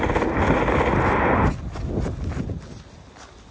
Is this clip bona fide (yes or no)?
yes